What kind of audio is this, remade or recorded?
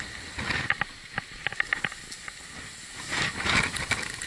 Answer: recorded